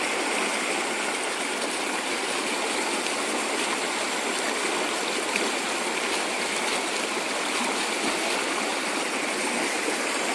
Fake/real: real